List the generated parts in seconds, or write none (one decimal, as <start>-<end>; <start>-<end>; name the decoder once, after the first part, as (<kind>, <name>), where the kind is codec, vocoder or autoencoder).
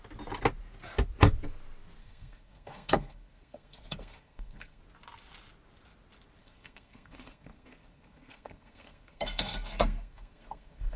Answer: 2.0-4.8 (codec, SNAC); 6.4-11.0